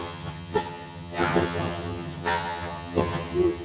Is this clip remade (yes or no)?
yes